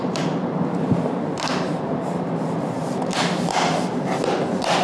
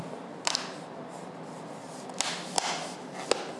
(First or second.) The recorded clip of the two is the second